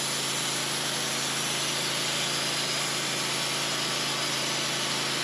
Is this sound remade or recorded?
recorded